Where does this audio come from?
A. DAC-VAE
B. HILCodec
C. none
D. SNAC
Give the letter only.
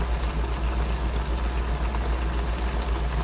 C